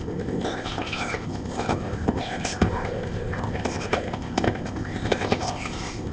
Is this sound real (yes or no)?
no